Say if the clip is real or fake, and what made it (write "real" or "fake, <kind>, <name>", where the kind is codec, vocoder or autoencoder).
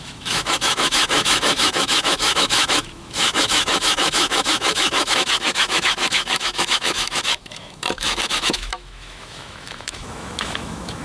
fake, autoencoder, DAC-VAE